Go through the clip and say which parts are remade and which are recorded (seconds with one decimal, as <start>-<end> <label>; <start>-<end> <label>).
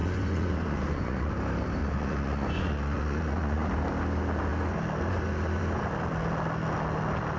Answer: 0.0-1.3 remade; 1.3-1.8 recorded; 1.8-3.7 remade; 3.7-7.4 recorded